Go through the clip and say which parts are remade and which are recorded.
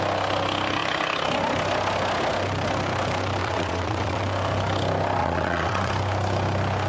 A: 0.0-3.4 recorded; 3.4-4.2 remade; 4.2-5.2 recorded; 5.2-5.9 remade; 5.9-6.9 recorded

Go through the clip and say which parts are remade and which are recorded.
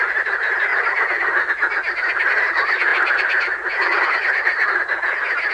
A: 0.0-5.5 recorded